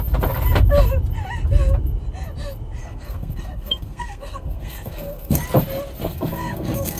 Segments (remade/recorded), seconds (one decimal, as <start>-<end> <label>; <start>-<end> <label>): 0.0-2.8 recorded; 2.8-5.4 remade; 5.4-6.0 recorded; 6.0-7.0 remade